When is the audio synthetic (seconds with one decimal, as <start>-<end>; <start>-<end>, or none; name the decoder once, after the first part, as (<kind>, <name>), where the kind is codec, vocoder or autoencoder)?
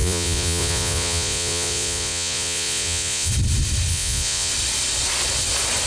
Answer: 0.0-3.3 (vocoder, Vocos); 3.9-4.5